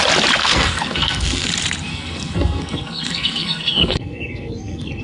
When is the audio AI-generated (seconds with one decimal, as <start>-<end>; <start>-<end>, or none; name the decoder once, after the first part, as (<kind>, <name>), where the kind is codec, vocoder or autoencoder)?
0.4-1.5 (codec, SNAC); 1.9-5.0

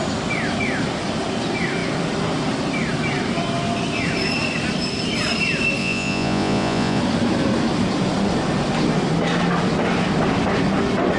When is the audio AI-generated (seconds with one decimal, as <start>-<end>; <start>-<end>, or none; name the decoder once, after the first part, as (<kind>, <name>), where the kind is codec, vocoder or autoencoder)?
5.8-7.0 (vocoder, Vocos)

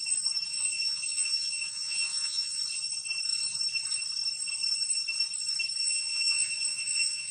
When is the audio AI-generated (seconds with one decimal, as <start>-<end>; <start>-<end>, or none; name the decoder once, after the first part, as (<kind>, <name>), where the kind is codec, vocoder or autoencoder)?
0.5-2.6 (vocoder, Vocos); 5.8-7.3

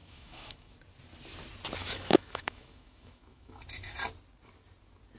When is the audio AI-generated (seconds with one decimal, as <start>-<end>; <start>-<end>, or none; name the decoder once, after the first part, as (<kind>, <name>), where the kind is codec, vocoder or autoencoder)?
0.0-0.7 (autoencoder, DAC-VAE); 1.8-3.6

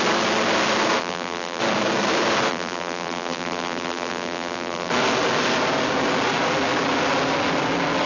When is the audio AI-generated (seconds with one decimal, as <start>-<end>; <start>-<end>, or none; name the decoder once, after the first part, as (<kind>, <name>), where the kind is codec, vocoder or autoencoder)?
1.0-1.6 (vocoder, BigVGAN v2); 2.5-4.9

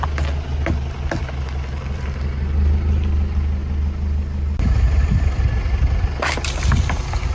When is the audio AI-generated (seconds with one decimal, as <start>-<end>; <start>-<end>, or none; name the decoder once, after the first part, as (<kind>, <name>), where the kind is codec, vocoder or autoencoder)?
none

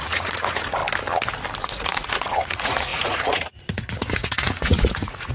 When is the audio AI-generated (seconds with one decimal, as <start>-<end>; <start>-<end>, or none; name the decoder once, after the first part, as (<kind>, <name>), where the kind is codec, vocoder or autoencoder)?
0.0-0.8 (vocoder, Vocos); 1.6-5.3

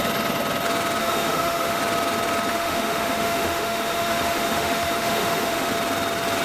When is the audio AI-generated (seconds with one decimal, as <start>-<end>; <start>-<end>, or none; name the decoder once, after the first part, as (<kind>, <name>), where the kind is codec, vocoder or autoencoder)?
1.0-1.8 (autoencoder, DAC-VAE); 2.5-5.7